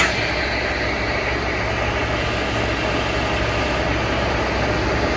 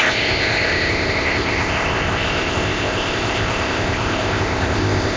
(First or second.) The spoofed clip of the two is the second